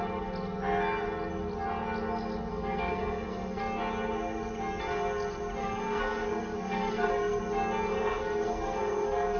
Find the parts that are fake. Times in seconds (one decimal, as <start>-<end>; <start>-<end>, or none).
2.5-3.6; 5.6-7.4; 7.9-9.4